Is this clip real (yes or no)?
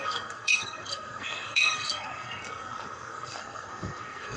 no